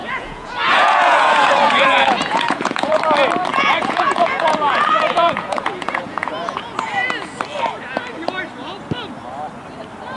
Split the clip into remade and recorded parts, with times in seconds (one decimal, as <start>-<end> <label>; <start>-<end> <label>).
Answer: 0.0-3.0 remade; 3.0-3.5 recorded; 3.5-7.4 remade; 7.4-10.2 recorded